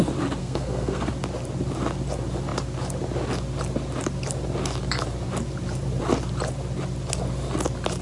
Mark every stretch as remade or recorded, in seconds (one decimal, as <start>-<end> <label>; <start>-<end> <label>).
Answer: 0.0-0.4 recorded; 0.4-1.1 remade; 1.1-8.0 recorded